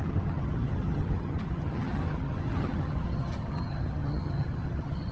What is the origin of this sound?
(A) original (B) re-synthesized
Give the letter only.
B